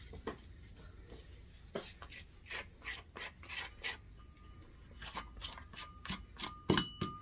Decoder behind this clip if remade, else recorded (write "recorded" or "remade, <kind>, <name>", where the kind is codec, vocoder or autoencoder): recorded